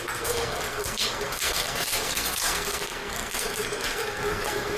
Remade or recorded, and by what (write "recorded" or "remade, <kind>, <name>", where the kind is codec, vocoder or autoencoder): remade, codec, SNAC